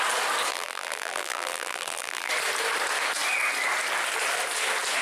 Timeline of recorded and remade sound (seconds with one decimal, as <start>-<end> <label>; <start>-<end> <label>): 0.0-0.5 recorded; 0.5-2.3 remade; 2.3-5.0 recorded